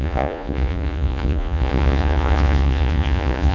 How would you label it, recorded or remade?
remade